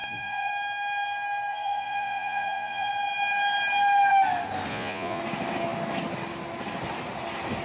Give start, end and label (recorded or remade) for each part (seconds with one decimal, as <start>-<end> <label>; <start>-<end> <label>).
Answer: 0.0-0.5 remade; 0.5-1.5 recorded; 1.5-2.9 remade; 2.9-4.7 recorded; 4.7-5.2 remade; 5.2-7.6 recorded

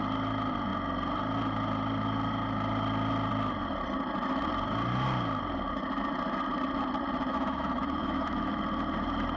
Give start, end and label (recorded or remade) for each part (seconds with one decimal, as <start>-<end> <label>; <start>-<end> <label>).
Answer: 0.0-7.3 recorded; 7.3-8.6 remade; 8.6-9.4 recorded